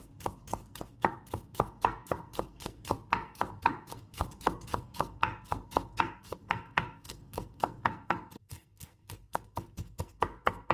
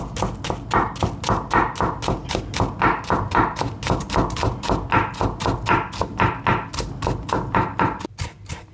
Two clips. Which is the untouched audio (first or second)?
second